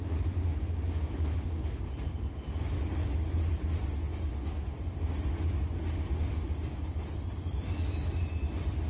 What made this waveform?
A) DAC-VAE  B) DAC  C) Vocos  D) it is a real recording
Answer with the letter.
D